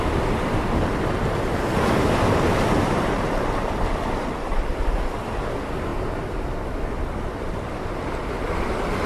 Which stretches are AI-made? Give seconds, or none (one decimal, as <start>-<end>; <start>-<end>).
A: 0.0-9.1

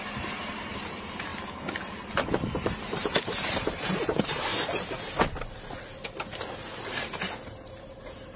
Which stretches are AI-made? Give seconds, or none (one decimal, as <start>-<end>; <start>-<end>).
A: 0.0-1.3; 2.3-4.5; 7.2-8.4

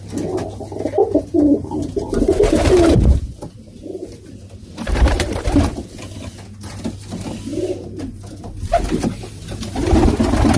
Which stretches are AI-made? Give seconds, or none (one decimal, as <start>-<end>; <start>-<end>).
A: 1.0-5.4; 7.5-10.1

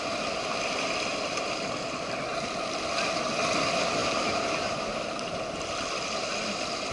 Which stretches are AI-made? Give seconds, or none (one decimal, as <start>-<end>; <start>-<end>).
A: 4.0-5.4

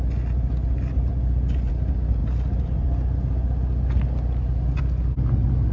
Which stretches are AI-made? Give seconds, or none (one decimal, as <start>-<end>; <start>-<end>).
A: 1.1-1.7